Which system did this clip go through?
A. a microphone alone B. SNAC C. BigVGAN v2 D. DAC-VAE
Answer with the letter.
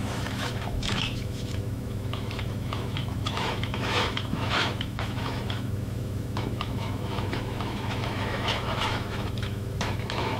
D